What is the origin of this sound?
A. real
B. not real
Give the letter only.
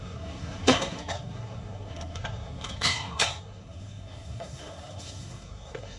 B